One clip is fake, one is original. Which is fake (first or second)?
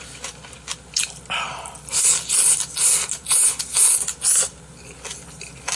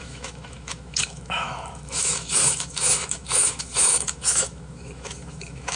second